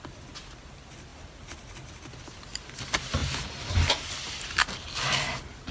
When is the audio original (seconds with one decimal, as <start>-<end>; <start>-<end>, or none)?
0.0-5.7